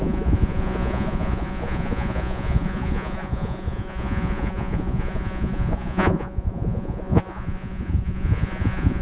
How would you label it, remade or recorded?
remade